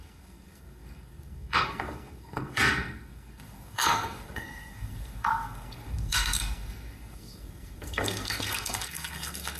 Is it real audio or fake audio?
fake